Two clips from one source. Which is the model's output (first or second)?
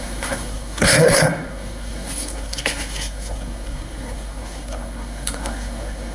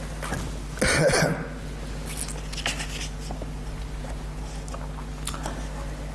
first